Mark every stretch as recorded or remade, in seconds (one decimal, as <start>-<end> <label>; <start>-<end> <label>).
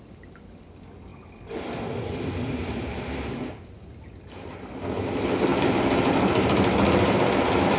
0.0-7.8 recorded